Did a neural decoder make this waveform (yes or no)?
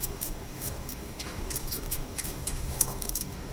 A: yes